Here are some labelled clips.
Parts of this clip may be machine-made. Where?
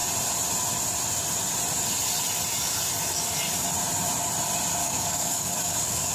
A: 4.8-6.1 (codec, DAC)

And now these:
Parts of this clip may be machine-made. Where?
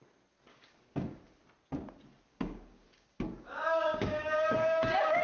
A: 0.5-1.4 (codec, DAC); 2.3-5.2